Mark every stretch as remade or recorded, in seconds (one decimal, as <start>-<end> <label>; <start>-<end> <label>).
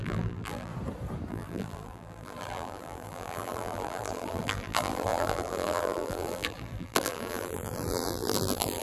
0.0-0.7 remade; 0.7-1.3 recorded; 1.3-8.8 remade